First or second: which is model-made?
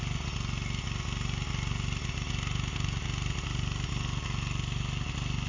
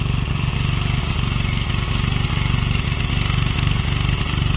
second